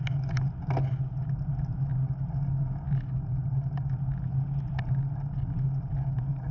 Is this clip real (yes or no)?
yes